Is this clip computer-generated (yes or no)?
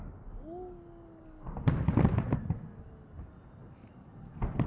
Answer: no